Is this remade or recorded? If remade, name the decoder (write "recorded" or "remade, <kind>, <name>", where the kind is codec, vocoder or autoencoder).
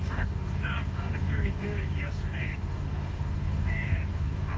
remade, codec, DAC